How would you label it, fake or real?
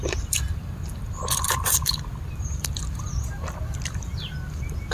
fake